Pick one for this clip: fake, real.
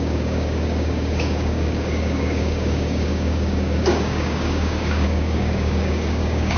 fake